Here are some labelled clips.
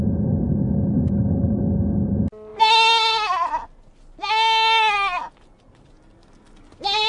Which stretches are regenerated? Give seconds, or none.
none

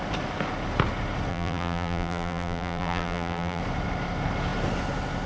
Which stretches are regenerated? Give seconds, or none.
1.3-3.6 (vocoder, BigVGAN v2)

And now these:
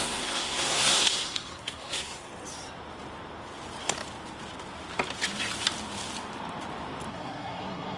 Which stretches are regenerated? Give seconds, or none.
0.0-2.3 (codec, SNAC); 7.1-8.0

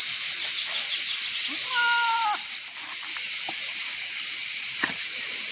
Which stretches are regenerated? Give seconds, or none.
3.3-5.5 (vocoder, BigVGAN v2)